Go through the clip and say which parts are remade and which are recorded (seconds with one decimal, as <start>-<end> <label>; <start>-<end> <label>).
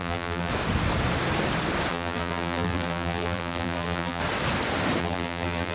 0.0-0.5 remade; 0.5-1.9 recorded; 1.9-4.2 remade; 4.2-5.0 recorded; 5.0-5.7 remade